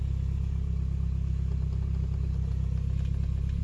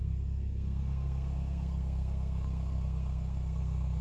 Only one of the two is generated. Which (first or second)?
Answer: second